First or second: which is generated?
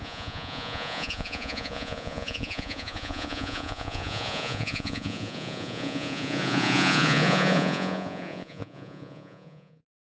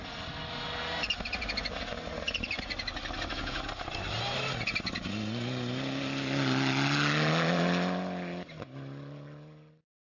first